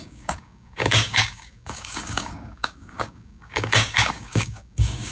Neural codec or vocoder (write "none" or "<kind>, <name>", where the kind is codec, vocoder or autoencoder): codec, DAC